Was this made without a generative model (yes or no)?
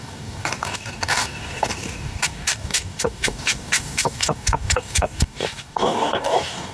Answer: no